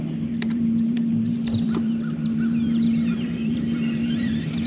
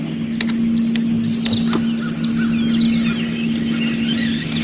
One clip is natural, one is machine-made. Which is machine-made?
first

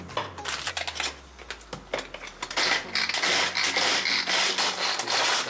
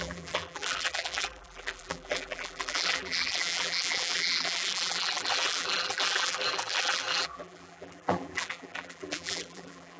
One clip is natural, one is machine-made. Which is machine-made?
second